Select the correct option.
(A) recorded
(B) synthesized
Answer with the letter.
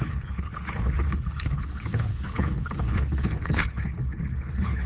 B